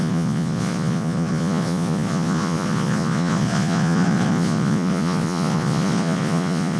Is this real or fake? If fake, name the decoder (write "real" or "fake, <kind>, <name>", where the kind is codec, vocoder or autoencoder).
fake, vocoder, Vocos